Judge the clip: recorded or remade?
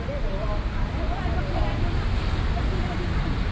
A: recorded